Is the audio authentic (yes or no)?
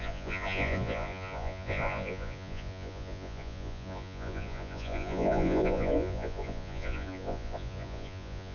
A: no